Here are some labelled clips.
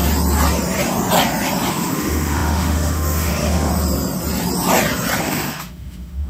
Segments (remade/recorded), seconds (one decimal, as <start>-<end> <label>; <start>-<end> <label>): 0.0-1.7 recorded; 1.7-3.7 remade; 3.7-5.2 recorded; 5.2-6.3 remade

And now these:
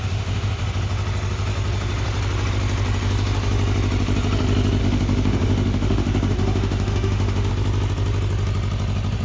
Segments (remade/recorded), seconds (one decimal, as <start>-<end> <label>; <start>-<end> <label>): 0.0-0.6 remade; 0.6-4.8 recorded; 4.8-7.5 remade; 7.5-9.2 recorded

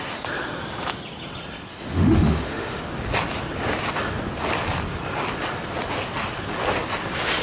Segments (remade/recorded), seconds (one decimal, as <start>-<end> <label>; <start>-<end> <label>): 0.0-1.7 recorded; 1.7-2.8 remade; 2.8-7.4 recorded

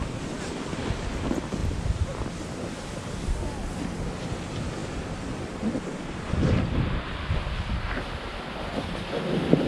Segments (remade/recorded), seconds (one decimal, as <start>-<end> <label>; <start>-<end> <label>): 0.0-9.7 recorded

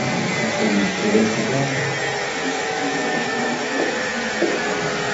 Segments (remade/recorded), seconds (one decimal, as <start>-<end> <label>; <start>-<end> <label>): 0.0-1.0 recorded; 1.0-1.8 remade; 1.8-2.4 recorded; 2.4-4.1 remade; 4.1-5.1 recorded

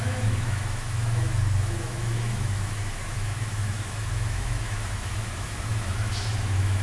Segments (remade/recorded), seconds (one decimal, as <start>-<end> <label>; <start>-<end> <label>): 0.0-6.8 remade